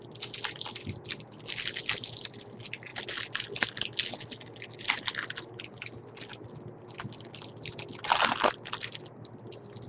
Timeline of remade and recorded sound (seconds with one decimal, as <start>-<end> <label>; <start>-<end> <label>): 0.0-9.9 recorded